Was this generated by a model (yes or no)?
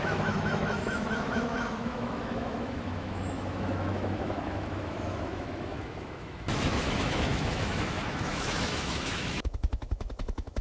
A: yes